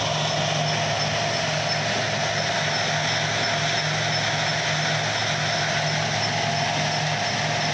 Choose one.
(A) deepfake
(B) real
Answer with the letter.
B